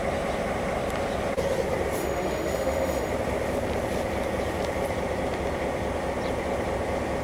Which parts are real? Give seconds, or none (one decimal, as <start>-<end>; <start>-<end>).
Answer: 0.0-2.0; 3.1-7.2